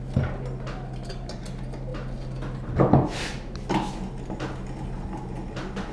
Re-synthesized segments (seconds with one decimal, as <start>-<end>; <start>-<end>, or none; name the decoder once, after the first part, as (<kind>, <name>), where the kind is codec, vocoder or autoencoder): none